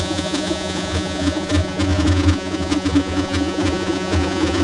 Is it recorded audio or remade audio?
remade